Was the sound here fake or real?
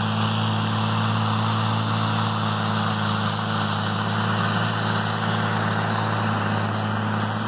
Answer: real